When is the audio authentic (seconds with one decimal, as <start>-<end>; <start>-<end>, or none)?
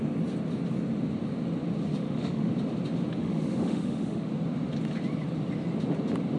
0.0-1.9; 2.5-3.2; 4.3-6.4